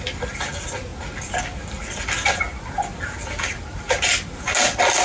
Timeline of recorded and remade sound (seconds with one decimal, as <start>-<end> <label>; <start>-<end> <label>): 0.0-5.0 recorded